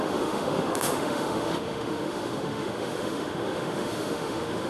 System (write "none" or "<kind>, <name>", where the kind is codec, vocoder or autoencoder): autoencoder, DAC-VAE